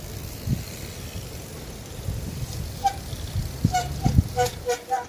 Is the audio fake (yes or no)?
no